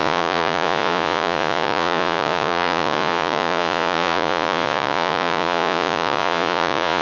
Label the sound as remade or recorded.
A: remade